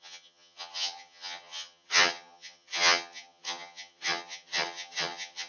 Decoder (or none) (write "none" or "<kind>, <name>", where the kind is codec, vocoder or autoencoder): vocoder, HiFi-GAN